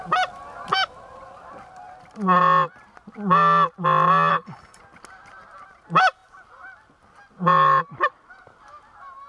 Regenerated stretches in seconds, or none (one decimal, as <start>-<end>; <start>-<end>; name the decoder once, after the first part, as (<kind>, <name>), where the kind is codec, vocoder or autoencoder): 4.3-4.8 (codec, HILCodec)